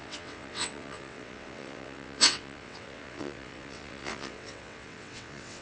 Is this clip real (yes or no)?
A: no